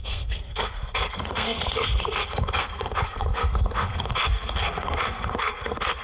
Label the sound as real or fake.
fake